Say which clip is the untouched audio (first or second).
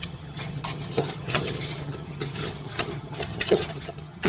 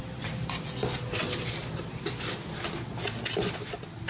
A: second